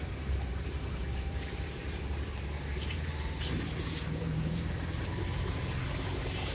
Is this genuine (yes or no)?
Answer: no